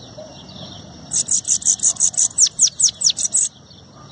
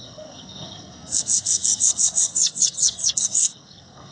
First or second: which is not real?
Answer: second